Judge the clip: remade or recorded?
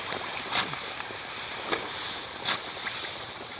recorded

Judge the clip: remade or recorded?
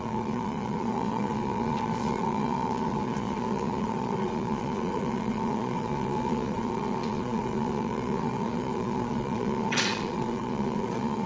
remade